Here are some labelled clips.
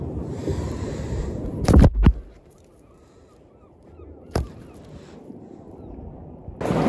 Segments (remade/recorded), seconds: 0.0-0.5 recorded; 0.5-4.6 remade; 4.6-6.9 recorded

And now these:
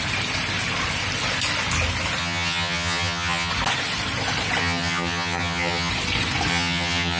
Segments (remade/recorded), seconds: 0.0-2.2 recorded; 2.2-3.5 remade; 3.5-4.6 recorded; 4.6-5.9 remade; 5.9-6.5 recorded; 6.5-7.2 remade